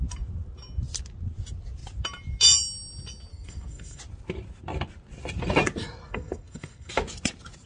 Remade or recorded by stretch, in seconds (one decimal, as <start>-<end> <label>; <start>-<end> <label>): 0.0-3.3 recorded; 3.3-4.0 remade; 4.0-6.1 recorded; 6.1-6.9 remade; 6.9-7.7 recorded